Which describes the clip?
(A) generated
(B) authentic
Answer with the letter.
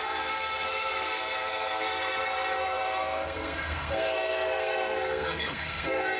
A